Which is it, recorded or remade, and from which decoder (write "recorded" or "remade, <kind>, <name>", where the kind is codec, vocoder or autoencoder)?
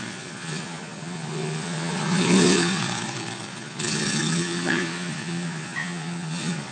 remade, vocoder, Vocos